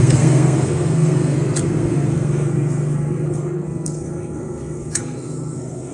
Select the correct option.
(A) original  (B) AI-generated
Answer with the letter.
B